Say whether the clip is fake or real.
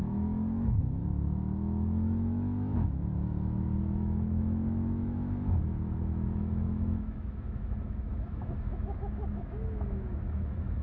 fake